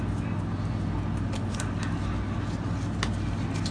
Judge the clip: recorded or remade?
recorded